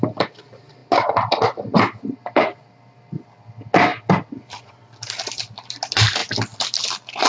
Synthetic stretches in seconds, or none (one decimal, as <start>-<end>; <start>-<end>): none